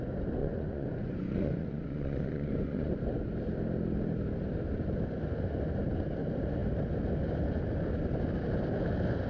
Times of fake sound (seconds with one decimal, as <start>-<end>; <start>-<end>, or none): 0.4-2.9